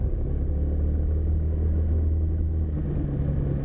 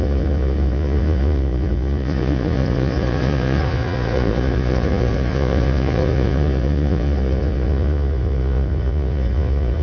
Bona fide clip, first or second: first